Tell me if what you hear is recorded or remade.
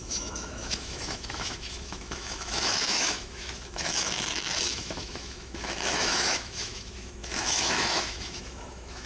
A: remade